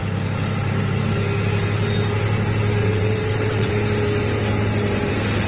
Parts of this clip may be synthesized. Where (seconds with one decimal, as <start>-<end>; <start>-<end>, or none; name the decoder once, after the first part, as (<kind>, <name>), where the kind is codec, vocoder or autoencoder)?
2.8-3.7 (vocoder, WaveNeXt)